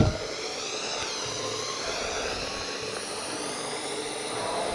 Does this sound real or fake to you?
real